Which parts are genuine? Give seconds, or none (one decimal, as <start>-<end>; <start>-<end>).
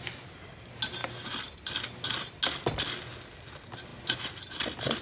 0.0-5.0